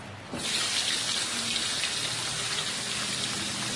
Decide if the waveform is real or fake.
real